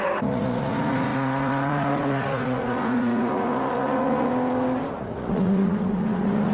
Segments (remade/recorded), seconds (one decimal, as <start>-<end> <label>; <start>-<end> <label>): 0.0-4.3 remade; 4.3-4.9 recorded; 4.9-6.5 remade